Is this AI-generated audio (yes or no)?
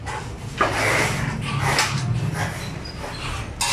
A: no